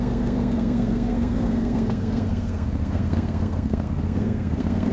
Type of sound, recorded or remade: remade